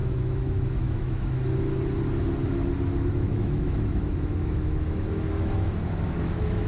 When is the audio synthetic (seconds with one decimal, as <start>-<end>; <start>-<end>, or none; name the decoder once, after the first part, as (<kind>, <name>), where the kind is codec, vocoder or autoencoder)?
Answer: 0.0-1.7 (autoencoder, DAC-VAE); 3.1-6.7